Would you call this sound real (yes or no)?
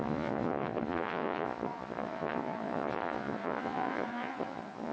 no